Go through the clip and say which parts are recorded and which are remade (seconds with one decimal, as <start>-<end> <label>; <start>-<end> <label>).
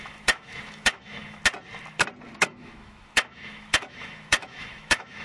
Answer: 0.0-1.4 remade; 1.4-2.4 recorded; 2.4-5.2 remade